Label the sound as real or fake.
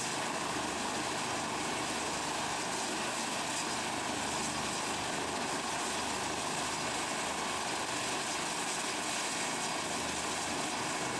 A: real